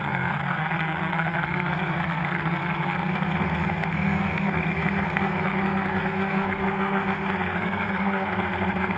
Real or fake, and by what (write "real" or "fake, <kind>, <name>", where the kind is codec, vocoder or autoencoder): fake, codec, SNAC